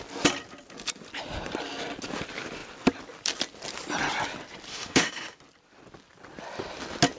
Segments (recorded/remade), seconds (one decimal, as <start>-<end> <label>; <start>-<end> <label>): 0.0-4.7 recorded; 4.7-5.4 remade; 5.4-7.2 recorded